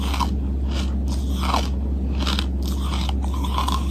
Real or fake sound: real